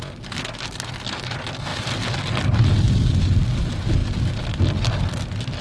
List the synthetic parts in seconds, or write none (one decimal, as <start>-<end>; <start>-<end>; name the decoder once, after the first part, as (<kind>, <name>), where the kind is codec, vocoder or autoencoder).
none